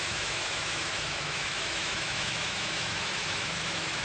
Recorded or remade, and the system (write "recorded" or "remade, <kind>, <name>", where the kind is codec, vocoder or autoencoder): remade, autoencoder, DAC-VAE